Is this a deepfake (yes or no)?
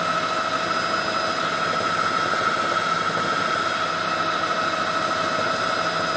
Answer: no